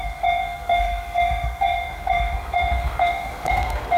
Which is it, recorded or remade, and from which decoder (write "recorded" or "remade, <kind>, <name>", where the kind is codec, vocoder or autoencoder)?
remade, codec, SNAC